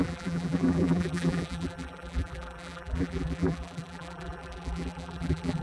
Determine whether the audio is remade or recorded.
remade